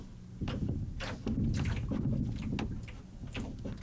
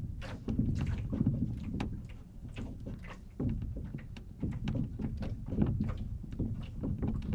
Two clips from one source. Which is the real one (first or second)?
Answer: first